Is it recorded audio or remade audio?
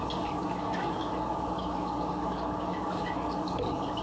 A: remade